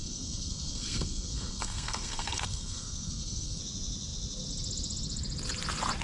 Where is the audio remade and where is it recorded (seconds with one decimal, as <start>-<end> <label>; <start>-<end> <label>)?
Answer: 0.0-3.6 remade; 3.6-6.0 recorded